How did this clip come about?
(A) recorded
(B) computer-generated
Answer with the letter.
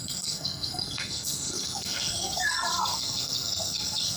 B